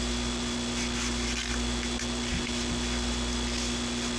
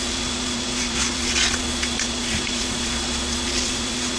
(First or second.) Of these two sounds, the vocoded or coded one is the second